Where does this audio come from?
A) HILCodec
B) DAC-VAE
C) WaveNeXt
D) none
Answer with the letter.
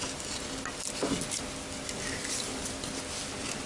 D